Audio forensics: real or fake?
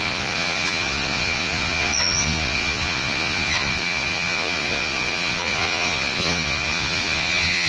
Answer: fake